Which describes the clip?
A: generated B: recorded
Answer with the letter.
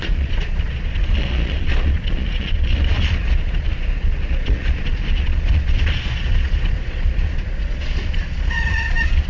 A